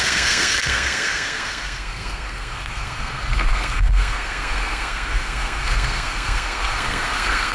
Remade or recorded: remade